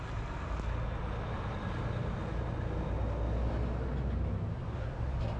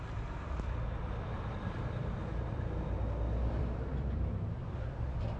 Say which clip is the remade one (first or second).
second